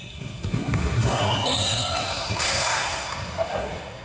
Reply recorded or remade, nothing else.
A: remade